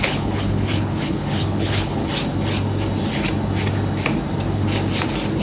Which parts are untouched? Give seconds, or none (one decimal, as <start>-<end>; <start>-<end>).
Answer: 2.0-5.4